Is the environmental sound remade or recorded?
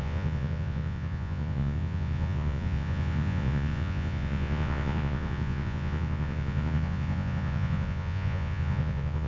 remade